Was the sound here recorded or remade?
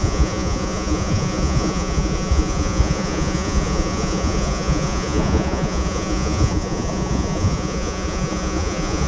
remade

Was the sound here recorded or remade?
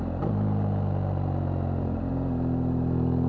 recorded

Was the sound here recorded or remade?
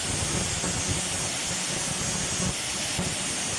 recorded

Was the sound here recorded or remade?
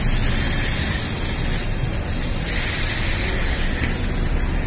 recorded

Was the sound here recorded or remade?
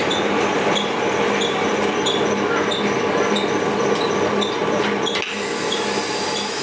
recorded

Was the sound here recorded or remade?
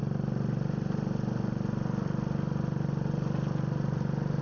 recorded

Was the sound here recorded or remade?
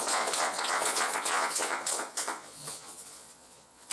remade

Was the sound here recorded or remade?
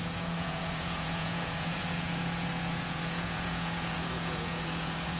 remade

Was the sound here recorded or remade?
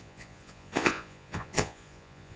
remade